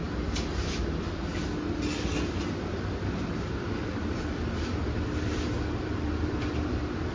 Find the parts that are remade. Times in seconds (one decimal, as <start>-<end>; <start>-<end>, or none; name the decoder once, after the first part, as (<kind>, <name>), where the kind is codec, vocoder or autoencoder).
0.8-1.3 (vocoder, BigVGAN v2); 2.7-7.1